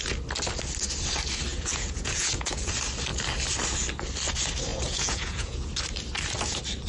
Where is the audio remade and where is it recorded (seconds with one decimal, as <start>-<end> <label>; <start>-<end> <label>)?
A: 0.0-1.5 recorded; 1.5-2.7 remade; 2.7-4.7 recorded; 4.7-5.7 remade; 5.7-6.9 recorded